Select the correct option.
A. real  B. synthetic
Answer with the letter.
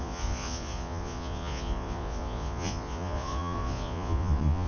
B